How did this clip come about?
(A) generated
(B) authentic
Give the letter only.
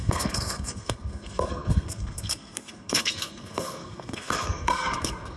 A